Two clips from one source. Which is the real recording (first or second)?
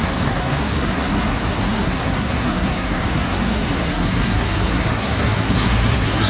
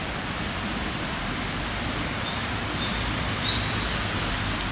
second